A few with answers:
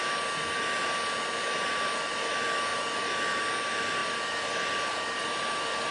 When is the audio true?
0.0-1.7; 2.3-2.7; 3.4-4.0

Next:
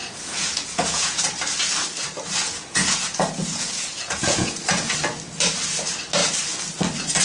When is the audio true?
1.2-2.4; 4.9-7.2

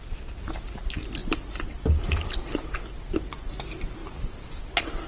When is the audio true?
0.0-1.2; 3.2-5.1

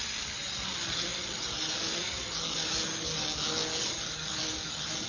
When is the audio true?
0.0-5.1

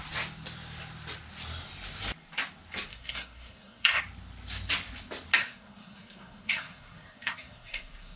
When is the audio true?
0.0-2.9; 4.0-5.4

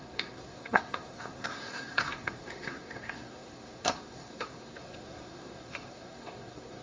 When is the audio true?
none